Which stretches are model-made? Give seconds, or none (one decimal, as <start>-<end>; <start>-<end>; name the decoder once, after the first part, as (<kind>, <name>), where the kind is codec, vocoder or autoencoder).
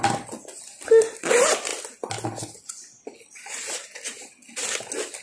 none